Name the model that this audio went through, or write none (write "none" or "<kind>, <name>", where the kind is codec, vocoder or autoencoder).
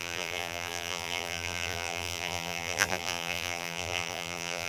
vocoder, BigVGAN v2